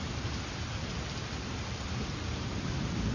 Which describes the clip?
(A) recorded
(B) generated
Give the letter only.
A